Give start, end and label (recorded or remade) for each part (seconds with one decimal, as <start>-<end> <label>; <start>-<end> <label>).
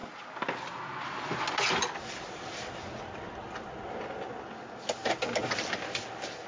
0.0-6.5 recorded